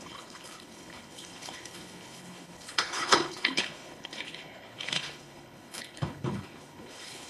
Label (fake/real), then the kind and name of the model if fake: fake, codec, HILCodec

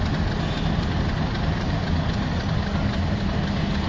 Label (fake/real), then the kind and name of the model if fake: real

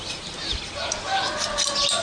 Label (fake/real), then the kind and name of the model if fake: real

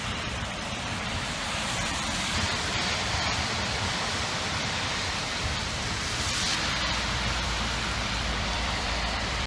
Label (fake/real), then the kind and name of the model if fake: fake, vocoder, BigVGAN v2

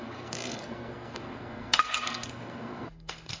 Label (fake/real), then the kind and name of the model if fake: fake, codec, SNAC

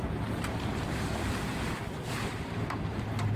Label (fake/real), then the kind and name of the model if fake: fake, vocoder, BigVGAN v2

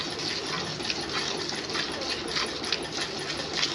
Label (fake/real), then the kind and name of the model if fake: real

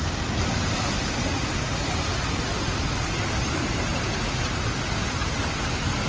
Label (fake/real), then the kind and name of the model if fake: real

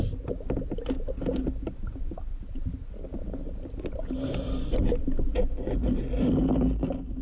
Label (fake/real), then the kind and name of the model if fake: real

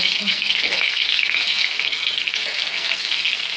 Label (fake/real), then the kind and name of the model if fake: fake, codec, SNAC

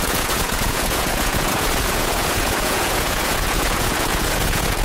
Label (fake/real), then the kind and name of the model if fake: fake, vocoder, Vocos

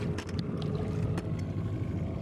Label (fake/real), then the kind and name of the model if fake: real